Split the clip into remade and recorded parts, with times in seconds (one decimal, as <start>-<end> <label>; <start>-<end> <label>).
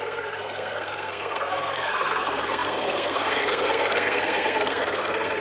0.0-5.4 remade